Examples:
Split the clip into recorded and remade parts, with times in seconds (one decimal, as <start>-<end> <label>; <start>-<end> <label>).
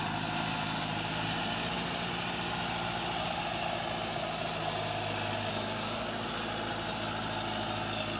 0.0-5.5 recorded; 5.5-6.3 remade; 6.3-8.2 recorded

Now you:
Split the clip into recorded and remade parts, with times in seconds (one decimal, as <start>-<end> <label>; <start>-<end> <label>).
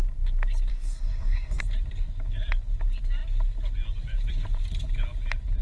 0.0-0.7 recorded; 0.7-1.6 remade; 1.6-5.6 recorded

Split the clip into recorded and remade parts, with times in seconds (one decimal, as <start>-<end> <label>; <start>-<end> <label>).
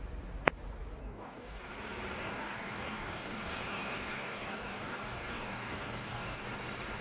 0.0-1.0 recorded; 1.0-1.6 remade; 1.6-2.2 recorded; 2.2-6.4 remade; 6.4-7.0 recorded